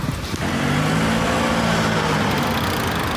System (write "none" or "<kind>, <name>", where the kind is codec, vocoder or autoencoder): none